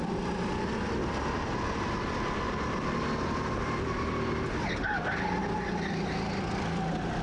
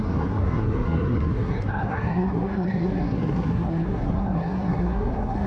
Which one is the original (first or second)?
first